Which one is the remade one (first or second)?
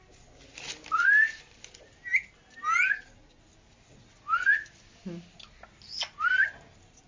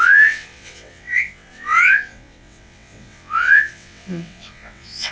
second